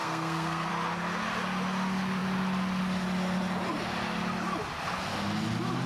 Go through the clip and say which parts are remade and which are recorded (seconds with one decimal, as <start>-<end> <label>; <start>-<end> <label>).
0.0-0.7 remade; 0.7-5.9 recorded